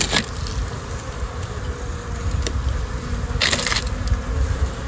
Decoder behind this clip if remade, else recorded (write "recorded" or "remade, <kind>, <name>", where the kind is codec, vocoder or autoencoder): recorded